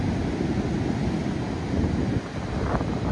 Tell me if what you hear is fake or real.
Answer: real